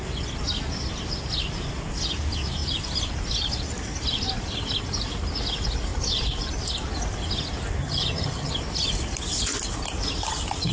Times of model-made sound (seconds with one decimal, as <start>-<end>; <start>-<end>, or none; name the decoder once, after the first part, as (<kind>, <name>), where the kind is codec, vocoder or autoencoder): 7.8-8.5 (vocoder, HiFi-GAN)